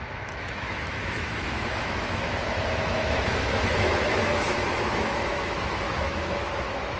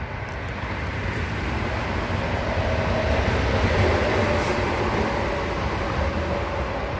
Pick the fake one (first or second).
first